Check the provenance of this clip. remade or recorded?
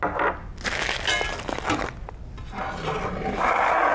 recorded